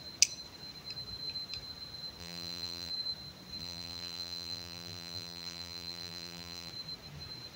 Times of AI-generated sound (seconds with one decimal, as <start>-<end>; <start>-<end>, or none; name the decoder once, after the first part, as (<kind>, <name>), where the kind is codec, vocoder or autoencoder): 2.2-2.9 (vocoder, BigVGAN v2); 3.6-6.7